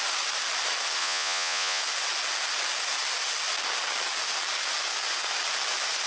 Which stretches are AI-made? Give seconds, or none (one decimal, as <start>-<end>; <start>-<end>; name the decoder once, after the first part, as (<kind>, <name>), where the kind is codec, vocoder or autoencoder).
1.0-1.8 (vocoder, Vocos)